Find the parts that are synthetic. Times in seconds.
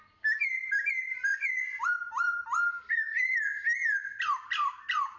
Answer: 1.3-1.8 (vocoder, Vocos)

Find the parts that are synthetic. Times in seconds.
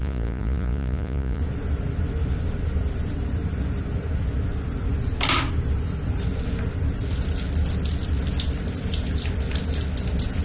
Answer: 0.0-1.4 (vocoder, Vocos)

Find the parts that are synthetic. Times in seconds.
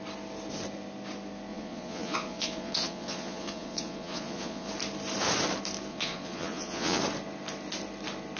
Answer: 1.5-4.7 (vocoder, Vocos); 5.9-7.0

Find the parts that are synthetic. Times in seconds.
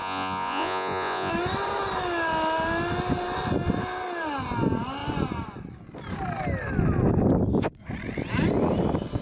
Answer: 0.0-1.3 (vocoder, Vocos)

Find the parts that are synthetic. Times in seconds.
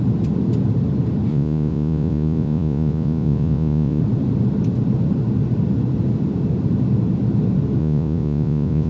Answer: 1.3-4.0 (vocoder, Vocos); 7.8-8.9